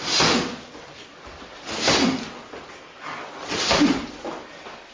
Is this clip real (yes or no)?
yes